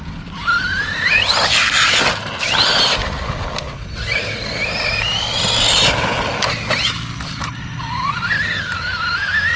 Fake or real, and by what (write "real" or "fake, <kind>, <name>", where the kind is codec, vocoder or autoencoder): real